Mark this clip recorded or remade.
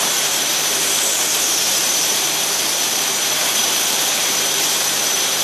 remade